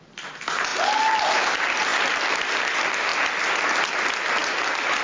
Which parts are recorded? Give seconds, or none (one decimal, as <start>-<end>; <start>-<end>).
0.0-5.0